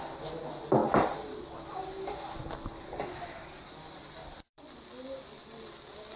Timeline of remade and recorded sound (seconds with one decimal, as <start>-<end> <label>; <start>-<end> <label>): 0.0-0.8 recorded; 0.8-2.5 remade; 2.5-4.2 recorded; 4.2-4.8 remade; 4.8-6.2 recorded